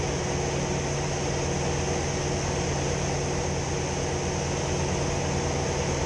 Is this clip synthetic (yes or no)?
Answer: no